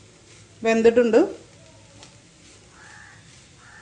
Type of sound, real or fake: real